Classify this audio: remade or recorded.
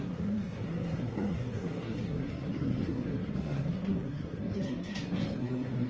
remade